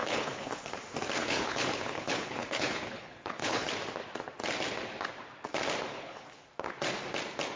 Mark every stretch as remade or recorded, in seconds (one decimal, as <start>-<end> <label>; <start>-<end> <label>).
0.0-0.7 remade; 0.7-1.2 recorded; 1.2-3.7 remade; 3.7-5.9 recorded; 5.9-6.5 remade; 6.5-7.6 recorded